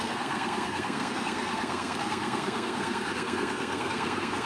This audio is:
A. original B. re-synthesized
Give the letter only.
B